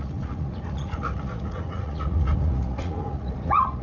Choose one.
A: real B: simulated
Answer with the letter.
B